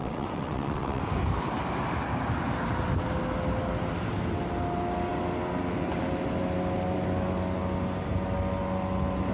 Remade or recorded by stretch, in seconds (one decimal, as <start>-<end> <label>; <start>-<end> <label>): 0.0-1.0 remade; 1.0-9.3 recorded